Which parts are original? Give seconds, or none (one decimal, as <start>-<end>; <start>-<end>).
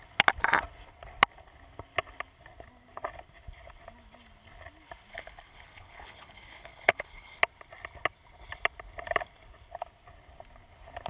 0.0-5.1; 7.4-11.1